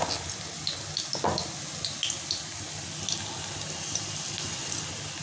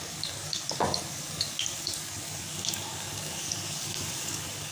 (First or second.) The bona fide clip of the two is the first